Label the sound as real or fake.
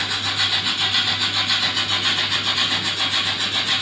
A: real